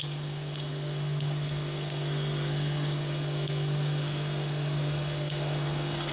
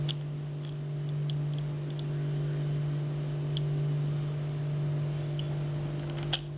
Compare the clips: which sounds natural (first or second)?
second